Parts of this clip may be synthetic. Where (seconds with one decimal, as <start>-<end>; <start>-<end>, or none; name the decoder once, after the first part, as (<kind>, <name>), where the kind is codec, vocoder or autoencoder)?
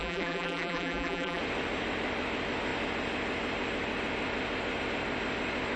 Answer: 0.0-1.4 (vocoder, BigVGAN v2)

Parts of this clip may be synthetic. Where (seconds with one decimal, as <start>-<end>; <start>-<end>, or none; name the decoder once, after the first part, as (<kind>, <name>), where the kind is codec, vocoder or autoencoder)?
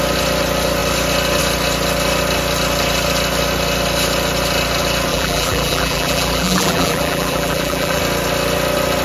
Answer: 5.1-8.0 (vocoder, BigVGAN v2)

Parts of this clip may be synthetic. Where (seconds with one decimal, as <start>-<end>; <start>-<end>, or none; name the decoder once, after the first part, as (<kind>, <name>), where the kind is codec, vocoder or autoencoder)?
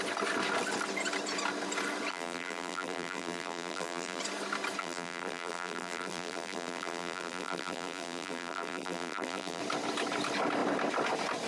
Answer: 2.1-4.2 (vocoder, BigVGAN v2); 4.8-9.6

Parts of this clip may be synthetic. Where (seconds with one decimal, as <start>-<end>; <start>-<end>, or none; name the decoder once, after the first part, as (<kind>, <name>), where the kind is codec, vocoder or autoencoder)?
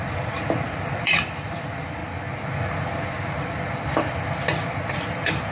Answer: 0.0-2.0 (vocoder, BigVGAN v2)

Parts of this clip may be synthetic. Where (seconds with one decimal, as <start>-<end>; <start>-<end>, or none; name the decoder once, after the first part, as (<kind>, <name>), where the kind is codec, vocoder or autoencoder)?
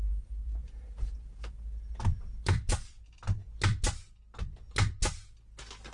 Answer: none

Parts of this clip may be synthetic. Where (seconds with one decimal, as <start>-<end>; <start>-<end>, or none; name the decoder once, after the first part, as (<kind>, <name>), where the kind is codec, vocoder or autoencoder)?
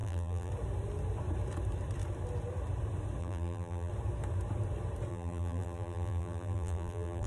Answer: 0.0-0.5 (vocoder, BigVGAN v2); 3.2-3.9; 5.1-7.3